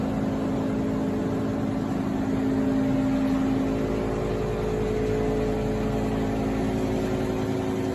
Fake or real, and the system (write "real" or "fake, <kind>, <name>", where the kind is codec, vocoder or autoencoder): real